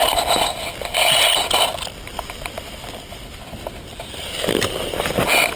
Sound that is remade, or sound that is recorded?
recorded